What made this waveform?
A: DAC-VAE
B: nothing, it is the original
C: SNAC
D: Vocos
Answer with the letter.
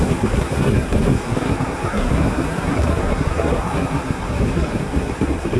C